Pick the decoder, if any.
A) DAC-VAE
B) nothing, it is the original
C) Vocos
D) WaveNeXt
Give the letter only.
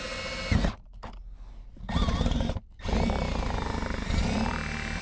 B